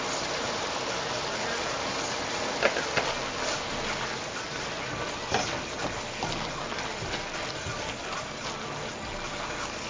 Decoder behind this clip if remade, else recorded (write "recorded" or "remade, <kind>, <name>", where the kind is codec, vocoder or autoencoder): recorded